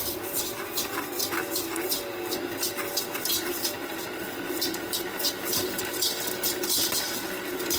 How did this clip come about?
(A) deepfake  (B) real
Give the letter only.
B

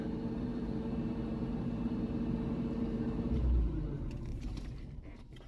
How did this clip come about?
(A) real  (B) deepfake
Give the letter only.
B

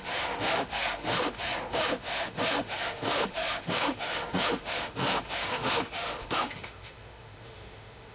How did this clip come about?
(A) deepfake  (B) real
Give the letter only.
A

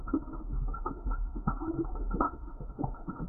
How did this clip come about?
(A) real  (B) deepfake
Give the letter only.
B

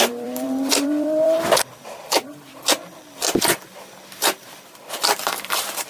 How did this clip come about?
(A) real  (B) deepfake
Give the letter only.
B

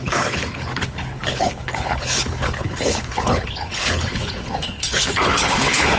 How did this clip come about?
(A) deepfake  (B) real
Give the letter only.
A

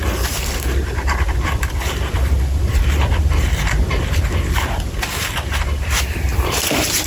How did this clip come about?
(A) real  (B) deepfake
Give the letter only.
B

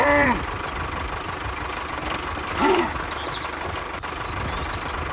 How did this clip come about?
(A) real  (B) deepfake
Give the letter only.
A